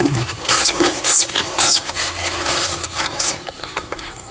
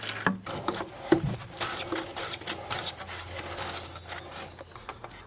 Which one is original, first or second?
second